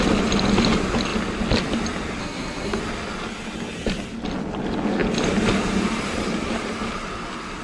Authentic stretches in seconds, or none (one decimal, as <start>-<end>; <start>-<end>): 0.0-2.2; 2.8-7.6